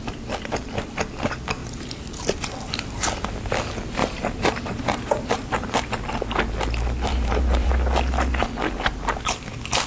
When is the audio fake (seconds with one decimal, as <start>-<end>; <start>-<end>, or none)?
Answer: 1.6-2.5; 4.0-5.9; 7.1-7.7